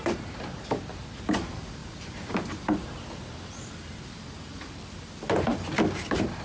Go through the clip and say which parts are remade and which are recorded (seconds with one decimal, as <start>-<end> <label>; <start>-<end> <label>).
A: 0.0-5.5 remade; 5.5-6.0 recorded; 6.0-6.4 remade